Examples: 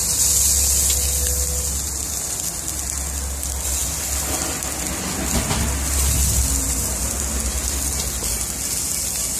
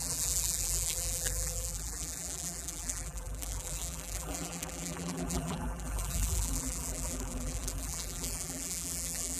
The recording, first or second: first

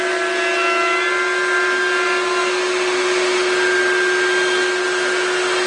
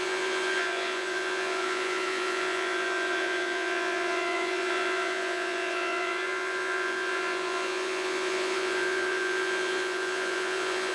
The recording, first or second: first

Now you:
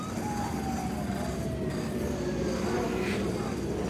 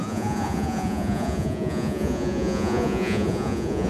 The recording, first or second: first